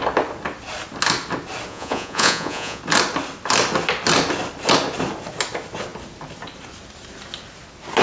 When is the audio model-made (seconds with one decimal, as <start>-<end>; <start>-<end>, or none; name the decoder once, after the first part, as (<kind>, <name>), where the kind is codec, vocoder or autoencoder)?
1.7-2.8 (vocoder, Vocos)